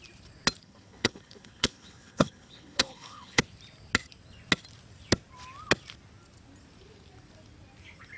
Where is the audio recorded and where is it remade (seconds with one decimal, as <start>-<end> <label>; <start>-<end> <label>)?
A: 0.0-0.6 recorded; 0.6-3.4 remade; 3.4-8.2 recorded